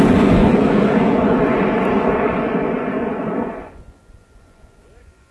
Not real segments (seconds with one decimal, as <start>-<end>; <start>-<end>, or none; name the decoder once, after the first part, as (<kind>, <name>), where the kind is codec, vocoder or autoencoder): 0.0-5.3 (vocoder, Vocos)